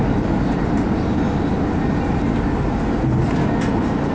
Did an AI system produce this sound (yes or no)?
no